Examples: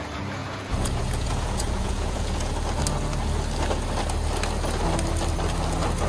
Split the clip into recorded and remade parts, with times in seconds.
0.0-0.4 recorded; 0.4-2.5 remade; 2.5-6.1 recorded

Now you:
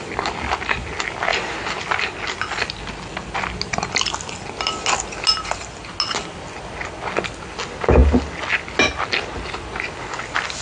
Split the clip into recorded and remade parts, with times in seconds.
0.0-10.6 recorded

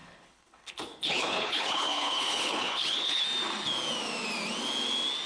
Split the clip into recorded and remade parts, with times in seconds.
0.0-3.2 remade; 3.2-5.3 recorded

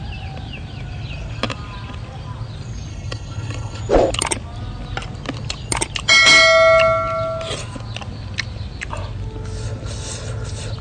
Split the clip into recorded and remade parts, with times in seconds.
0.0-2.9 recorded; 2.9-3.8 remade; 3.8-10.8 recorded

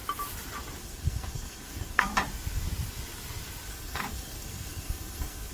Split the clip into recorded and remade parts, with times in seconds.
0.0-0.8 recorded; 0.8-2.1 remade; 2.1-3.7 recorded; 3.7-5.5 remade